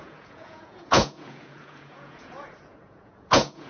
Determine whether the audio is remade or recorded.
remade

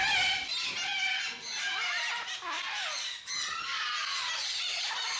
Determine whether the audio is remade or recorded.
recorded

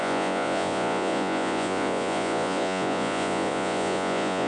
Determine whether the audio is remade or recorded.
remade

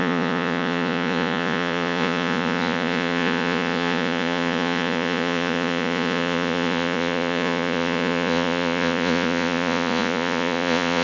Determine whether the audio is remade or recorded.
remade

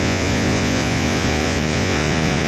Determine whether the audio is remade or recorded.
remade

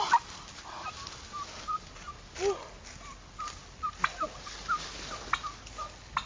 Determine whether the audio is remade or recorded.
recorded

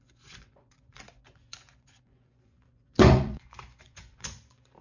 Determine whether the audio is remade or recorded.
remade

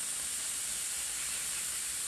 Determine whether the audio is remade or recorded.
recorded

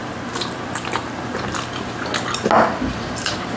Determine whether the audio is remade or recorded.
recorded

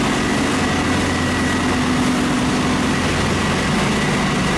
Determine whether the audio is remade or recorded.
recorded